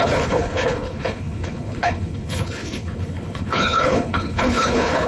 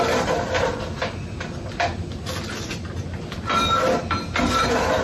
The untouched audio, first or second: second